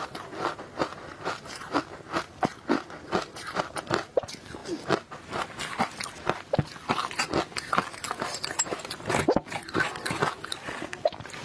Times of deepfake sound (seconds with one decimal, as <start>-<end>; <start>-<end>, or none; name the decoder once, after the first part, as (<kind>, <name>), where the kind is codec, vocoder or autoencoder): none